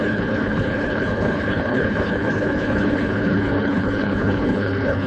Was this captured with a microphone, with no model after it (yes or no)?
no